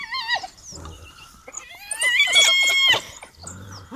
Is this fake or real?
real